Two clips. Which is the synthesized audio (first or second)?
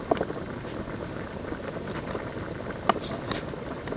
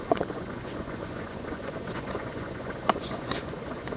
second